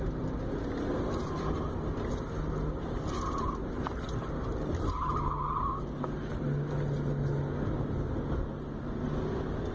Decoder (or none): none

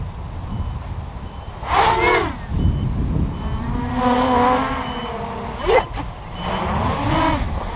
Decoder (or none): none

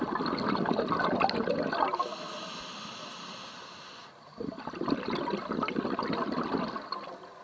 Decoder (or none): none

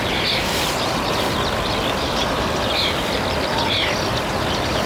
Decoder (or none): none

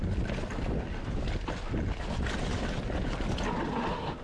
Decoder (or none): none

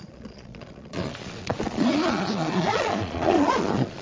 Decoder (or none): vocoder, Vocos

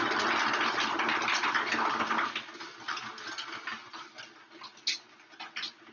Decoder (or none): none